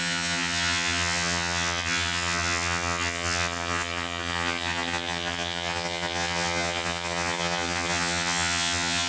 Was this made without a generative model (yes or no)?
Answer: no